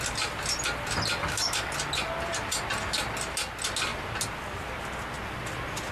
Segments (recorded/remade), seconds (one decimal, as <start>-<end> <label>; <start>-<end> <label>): 0.0-1.2 recorded; 1.2-1.7 remade; 1.7-5.9 recorded